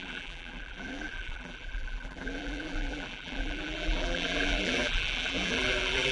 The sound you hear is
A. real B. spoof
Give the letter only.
B